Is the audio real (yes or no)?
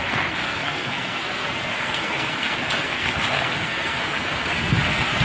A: no